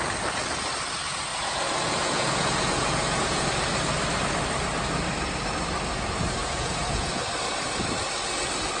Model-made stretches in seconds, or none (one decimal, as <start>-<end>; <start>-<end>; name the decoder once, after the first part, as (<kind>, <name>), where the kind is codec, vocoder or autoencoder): 1.3-3.5 (vocoder, Vocos); 6.4-7.1